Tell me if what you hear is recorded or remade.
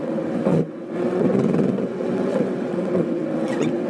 remade